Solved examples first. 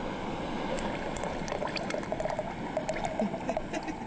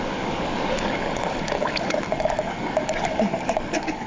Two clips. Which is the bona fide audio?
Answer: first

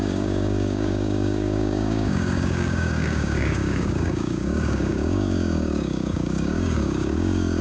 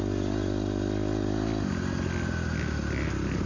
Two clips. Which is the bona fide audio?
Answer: second